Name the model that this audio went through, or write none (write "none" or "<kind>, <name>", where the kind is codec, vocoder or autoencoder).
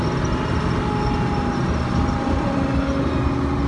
none